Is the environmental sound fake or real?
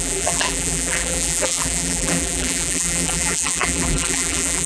fake